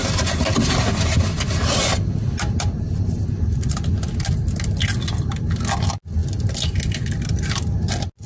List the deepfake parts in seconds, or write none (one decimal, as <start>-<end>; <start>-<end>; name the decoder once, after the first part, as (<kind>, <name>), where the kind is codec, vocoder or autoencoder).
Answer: none